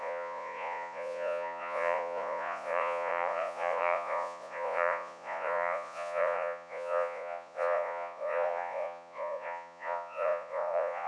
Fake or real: fake